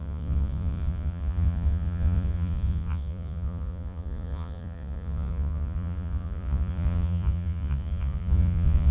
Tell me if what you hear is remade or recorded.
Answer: remade